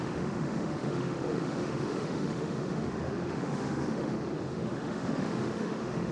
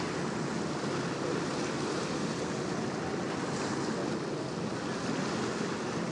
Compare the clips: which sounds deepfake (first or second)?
first